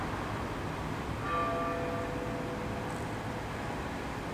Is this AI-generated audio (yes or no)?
no